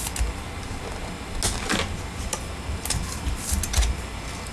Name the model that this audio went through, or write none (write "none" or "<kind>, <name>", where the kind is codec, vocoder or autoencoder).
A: none